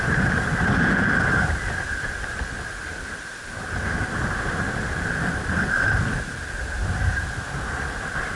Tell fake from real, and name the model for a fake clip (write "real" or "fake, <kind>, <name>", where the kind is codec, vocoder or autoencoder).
real